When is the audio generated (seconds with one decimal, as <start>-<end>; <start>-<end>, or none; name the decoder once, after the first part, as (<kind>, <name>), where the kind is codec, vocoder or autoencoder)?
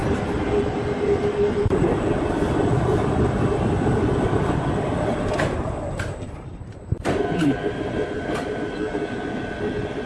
0.0-0.5 (vocoder, BigVGAN v2); 5.1-9.3